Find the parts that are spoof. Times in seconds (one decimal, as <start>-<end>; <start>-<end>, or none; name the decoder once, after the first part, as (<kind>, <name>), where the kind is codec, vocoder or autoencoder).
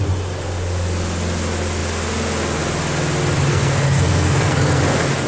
3.5-4.8 (codec, SNAC)